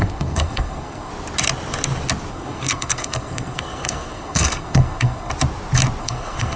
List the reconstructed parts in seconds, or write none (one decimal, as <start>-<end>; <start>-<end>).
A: 0.0-1.1; 2.3-5.3; 6.0-6.6